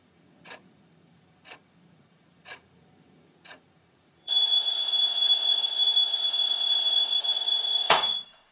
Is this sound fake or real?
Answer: fake